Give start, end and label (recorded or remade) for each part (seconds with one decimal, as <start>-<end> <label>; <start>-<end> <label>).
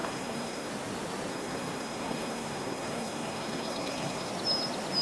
0.0-0.7 remade; 0.7-1.3 recorded; 1.3-4.3 remade; 4.3-5.0 recorded